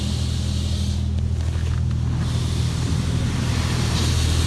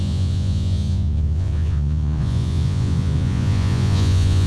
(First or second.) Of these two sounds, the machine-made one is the second